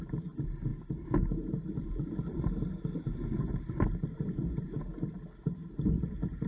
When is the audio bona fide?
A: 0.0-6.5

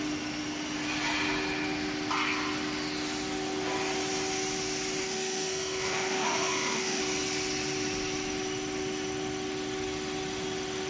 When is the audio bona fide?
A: 0.0-5.0; 7.0-10.9

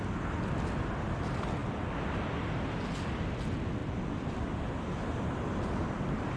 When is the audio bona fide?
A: 0.0-6.4

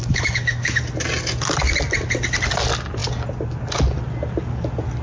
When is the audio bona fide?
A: 0.8-5.0

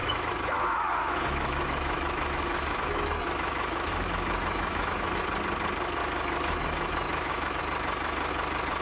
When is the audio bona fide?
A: 5.2-6.0; 7.6-8.8

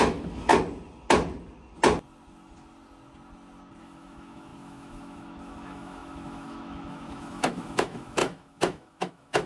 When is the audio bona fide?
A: 0.5-3.8